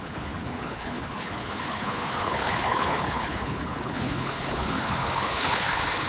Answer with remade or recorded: remade